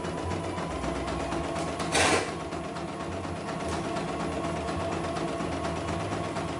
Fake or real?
real